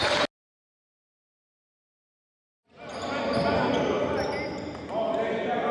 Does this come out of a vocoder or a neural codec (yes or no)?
no